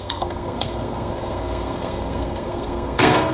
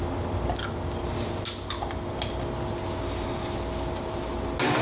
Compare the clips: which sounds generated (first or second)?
first